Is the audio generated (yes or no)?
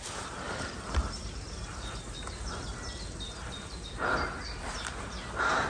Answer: no